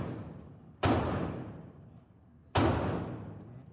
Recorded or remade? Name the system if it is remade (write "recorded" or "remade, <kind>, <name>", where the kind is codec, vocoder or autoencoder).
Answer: recorded